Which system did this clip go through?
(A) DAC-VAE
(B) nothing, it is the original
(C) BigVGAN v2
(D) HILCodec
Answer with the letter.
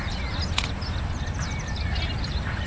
B